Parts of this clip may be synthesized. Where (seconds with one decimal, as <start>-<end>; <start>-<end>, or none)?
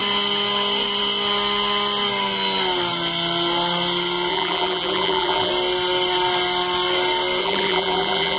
4.3-5.5; 7.4-8.4